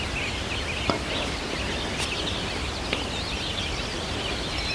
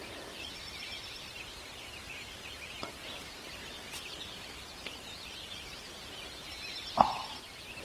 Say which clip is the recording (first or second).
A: first